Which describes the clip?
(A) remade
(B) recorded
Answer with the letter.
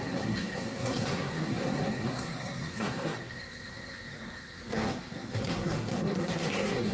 A